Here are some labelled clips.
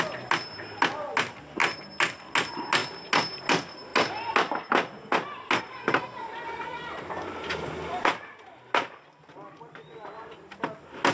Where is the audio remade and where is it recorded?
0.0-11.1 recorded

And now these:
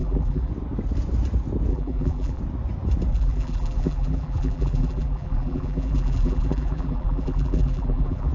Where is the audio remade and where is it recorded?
0.0-0.5 remade; 0.5-1.7 recorded; 1.7-2.4 remade; 2.4-3.1 recorded; 3.1-8.3 remade

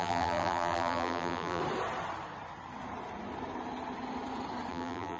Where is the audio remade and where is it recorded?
0.0-1.6 remade; 1.6-4.7 recorded; 4.7-5.2 remade

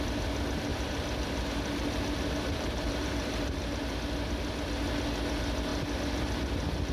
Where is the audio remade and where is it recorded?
0.0-0.7 recorded; 0.7-4.0 remade; 4.0-6.9 recorded

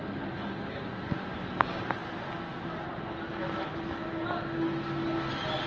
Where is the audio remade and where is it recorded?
0.0-5.7 recorded

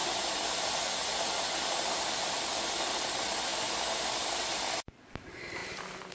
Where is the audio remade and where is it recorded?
0.0-3.5 remade; 3.5-4.2 recorded; 4.2-6.1 remade

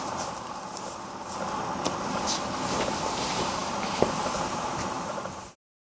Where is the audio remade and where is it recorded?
0.0-0.7 remade; 0.7-3.1 recorded; 3.1-6.0 remade

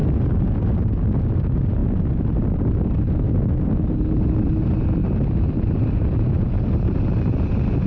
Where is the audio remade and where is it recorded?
0.0-5.0 recorded; 5.0-7.0 remade; 7.0-7.9 recorded